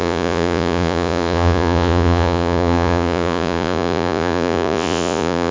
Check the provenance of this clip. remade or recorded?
remade